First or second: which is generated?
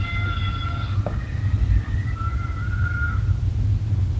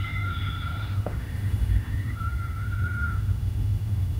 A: second